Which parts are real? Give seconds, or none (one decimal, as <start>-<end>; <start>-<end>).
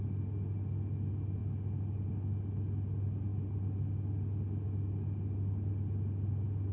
0.0-6.7